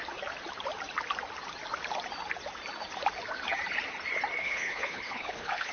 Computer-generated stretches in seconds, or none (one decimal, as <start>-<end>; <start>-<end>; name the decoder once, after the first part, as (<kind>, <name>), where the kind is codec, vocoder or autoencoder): 4.4-5.7 (codec, HILCodec)